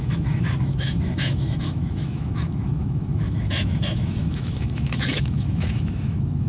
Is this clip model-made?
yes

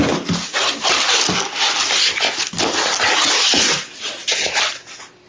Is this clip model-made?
no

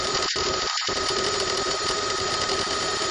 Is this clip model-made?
yes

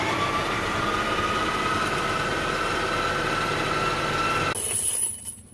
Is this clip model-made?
no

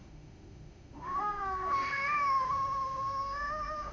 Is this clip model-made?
yes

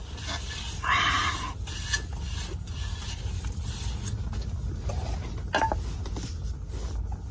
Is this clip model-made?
no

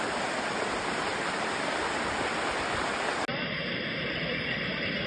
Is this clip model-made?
no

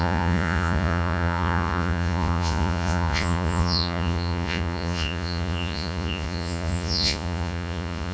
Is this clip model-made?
yes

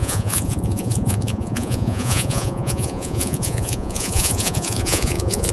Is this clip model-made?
yes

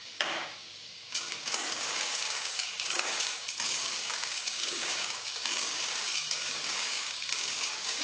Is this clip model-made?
yes